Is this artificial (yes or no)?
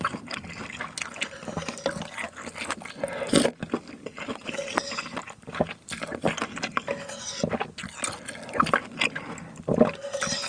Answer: no